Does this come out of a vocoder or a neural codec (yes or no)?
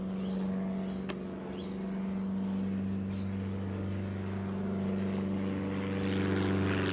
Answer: no